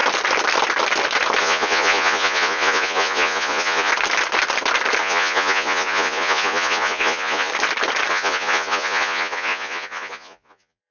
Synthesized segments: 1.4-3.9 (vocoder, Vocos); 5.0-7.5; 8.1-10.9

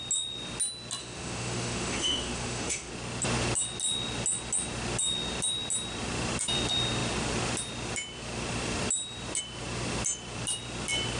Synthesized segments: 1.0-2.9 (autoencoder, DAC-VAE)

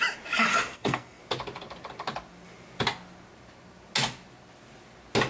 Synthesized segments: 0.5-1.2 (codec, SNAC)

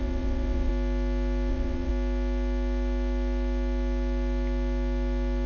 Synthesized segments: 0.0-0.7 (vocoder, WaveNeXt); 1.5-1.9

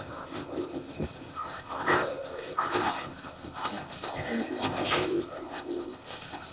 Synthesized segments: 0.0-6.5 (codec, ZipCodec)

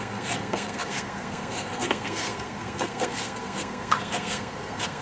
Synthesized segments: 0.0-5.0 (codec, SNAC)

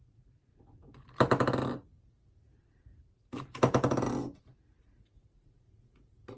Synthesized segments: 0.0-1.0 (vocoder, Vocos); 4.8-6.4